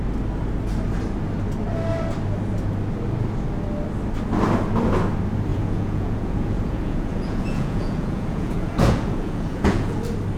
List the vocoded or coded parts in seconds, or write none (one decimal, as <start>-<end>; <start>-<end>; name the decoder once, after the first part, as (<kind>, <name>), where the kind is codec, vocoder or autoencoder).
5.5-10.0 (vocoder, Vocos)